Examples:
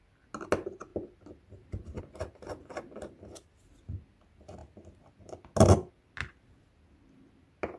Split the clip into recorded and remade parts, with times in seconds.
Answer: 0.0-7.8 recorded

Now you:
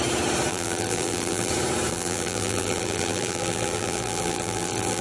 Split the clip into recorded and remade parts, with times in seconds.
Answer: 0.0-0.5 recorded; 0.5-1.5 remade; 1.5-1.9 recorded; 1.9-5.0 remade

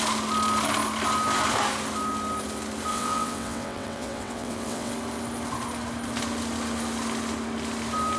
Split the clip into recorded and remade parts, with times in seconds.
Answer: 0.0-2.9 recorded; 2.9-4.9 remade; 4.9-8.2 recorded

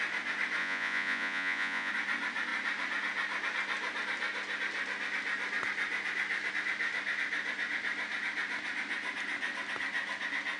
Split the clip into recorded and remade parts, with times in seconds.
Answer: 0.0-0.6 recorded; 0.6-1.9 remade; 1.9-10.6 recorded

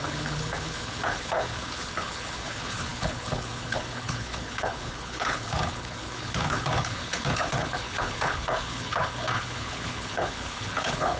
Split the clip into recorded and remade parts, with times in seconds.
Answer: 0.0-11.2 remade